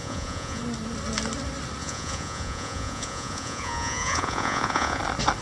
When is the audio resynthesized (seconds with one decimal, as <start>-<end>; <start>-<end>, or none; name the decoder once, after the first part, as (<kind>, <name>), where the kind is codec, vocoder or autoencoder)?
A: 0.0-0.6 (vocoder, Vocos); 1.8-5.0